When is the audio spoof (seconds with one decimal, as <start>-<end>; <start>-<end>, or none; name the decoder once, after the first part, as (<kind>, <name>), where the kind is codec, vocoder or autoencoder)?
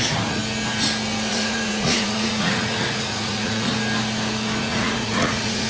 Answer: 0.0-0.4 (vocoder, Vocos); 1.3-3.7; 4.6-5.7